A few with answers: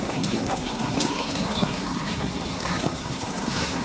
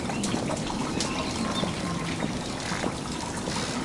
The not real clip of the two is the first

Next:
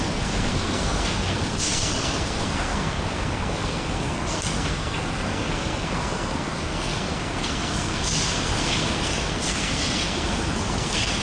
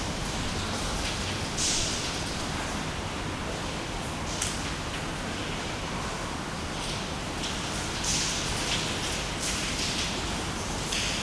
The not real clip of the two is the first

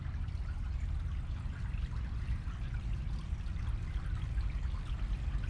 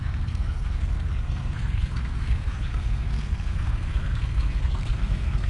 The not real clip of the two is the second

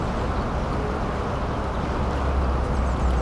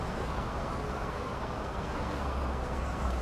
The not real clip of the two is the second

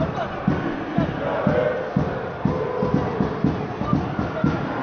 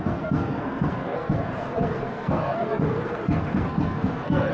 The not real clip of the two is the second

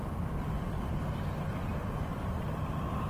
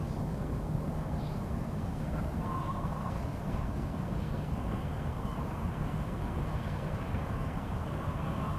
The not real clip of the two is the second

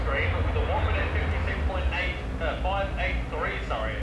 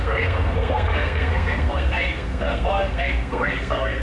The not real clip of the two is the second